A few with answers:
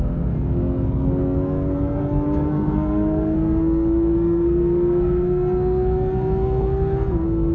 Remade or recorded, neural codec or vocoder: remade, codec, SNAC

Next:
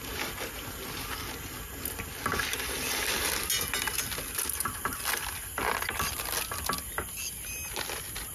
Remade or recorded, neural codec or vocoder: recorded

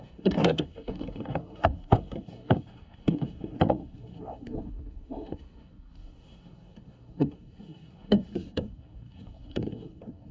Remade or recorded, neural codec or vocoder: remade, codec, SNAC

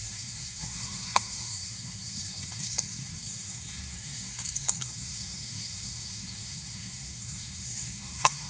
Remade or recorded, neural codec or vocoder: remade, codec, SNAC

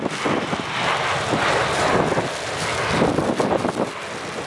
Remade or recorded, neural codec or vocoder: recorded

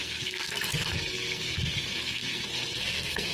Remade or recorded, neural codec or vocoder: remade, codec, SNAC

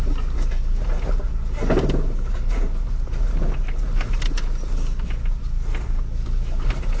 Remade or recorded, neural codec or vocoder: recorded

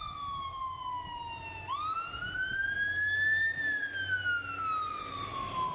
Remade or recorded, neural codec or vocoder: recorded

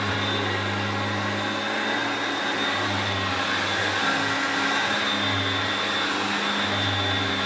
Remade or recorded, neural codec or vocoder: recorded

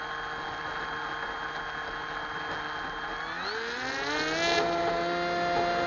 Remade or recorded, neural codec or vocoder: recorded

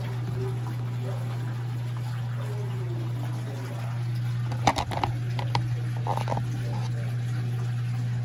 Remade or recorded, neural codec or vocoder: recorded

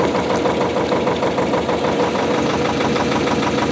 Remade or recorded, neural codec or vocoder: recorded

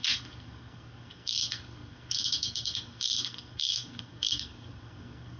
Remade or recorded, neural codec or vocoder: remade, codec, SNAC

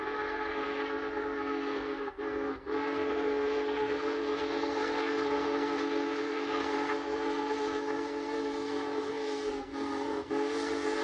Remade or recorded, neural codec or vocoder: remade, codec, SNAC